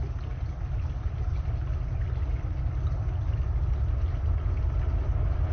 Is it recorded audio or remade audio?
recorded